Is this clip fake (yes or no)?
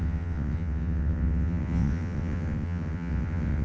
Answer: yes